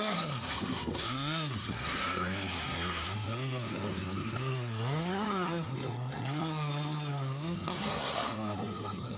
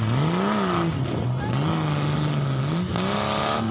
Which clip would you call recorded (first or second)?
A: second